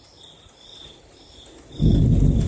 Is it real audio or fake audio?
real